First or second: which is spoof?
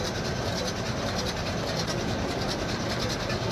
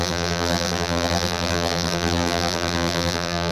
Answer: second